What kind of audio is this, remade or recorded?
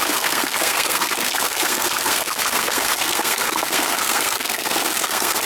remade